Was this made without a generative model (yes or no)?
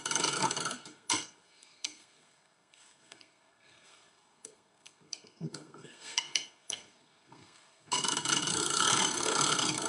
no